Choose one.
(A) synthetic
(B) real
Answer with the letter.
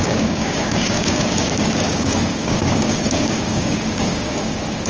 A